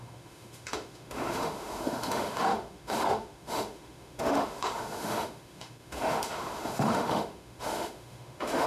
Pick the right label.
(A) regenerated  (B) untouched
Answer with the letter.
A